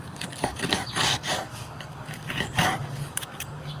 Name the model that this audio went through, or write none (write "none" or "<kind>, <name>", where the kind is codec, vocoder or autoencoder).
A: codec, DAC